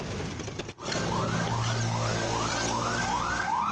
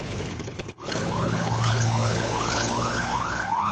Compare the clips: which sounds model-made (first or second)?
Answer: second